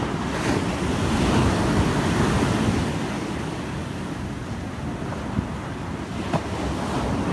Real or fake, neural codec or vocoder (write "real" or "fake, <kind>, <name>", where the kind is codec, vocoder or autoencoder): real